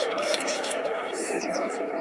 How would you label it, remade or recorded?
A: remade